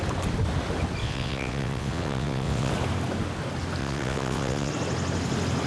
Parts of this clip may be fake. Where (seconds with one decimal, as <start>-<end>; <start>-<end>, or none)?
1.0-2.7; 3.8-4.7